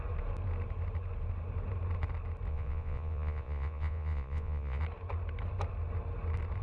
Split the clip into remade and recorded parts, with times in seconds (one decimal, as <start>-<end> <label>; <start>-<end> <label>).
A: 0.0-2.5 recorded; 2.5-4.8 remade; 4.8-6.6 recorded

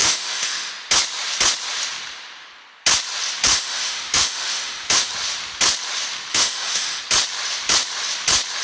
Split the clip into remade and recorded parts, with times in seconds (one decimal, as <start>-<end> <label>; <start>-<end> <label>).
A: 0.0-0.7 remade; 0.7-3.5 recorded; 3.5-5.1 remade; 5.1-6.3 recorded; 6.3-7.0 remade; 7.0-8.6 recorded

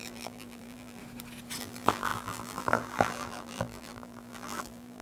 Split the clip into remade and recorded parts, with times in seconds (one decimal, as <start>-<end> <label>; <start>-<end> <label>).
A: 0.0-1.0 remade; 1.0-1.6 recorded; 1.6-5.0 remade

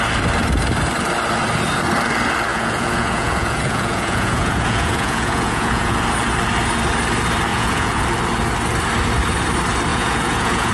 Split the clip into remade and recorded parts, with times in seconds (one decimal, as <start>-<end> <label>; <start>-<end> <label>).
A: 0.0-2.5 recorded; 2.5-6.0 remade; 6.0-7.5 recorded; 7.5-8.0 remade; 8.0-9.9 recorded; 9.9-10.7 remade

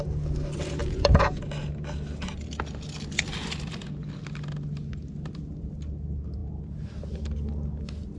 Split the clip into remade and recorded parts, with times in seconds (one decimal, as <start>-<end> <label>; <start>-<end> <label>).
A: 0.0-0.8 recorded; 0.8-1.4 remade; 1.4-8.2 recorded

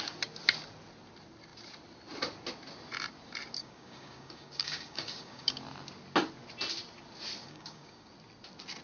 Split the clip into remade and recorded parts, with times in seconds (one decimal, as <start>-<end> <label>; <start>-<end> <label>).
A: 0.0-3.6 recorded; 3.6-5.5 remade; 5.5-7.4 recorded; 7.4-8.1 remade; 8.1-8.8 recorded

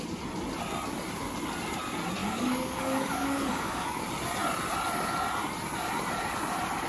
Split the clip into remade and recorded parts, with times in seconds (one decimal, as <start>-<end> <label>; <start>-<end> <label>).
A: 0.0-2.2 recorded; 2.2-4.0 remade; 4.0-6.9 recorded